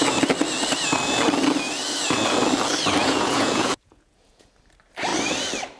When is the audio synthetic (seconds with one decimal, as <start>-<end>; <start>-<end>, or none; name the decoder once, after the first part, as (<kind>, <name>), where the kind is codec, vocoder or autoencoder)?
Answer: 3.0-4.5 (vocoder, Vocos)